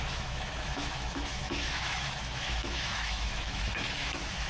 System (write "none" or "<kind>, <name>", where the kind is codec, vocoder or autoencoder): autoencoder, DAC-VAE